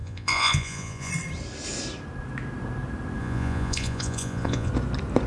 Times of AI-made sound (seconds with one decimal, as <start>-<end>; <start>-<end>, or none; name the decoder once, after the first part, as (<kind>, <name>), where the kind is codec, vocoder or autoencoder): 0.0-1.1 (vocoder, Vocos); 3.2-4.7